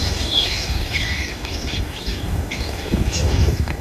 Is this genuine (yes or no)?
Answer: no